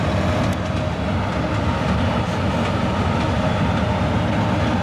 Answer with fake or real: real